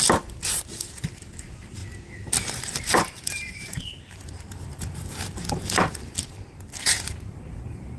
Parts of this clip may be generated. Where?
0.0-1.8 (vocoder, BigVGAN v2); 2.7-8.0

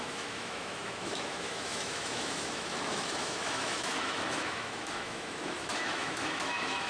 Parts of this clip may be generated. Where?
0.0-6.9 (autoencoder, DAC-VAE)

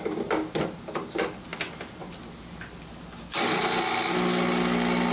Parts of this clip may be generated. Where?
none

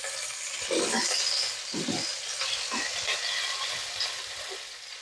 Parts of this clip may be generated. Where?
none

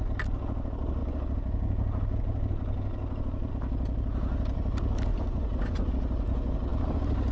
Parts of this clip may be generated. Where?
5.1-5.9 (vocoder, Vocos)

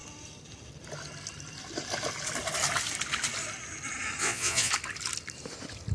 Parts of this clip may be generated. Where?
4.2-4.7 (vocoder, Vocos)